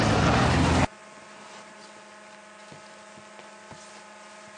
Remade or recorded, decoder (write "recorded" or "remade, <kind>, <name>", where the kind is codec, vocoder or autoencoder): recorded